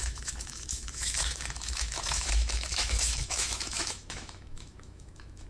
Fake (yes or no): yes